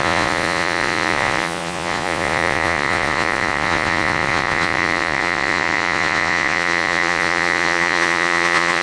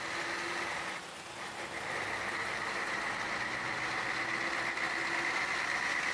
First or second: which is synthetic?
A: first